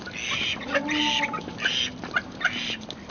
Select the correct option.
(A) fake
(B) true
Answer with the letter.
B